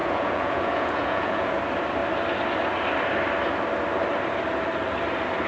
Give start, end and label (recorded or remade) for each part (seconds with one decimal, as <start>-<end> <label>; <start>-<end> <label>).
0.0-1.6 remade; 1.6-5.5 recorded